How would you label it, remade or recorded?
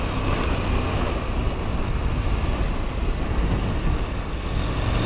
recorded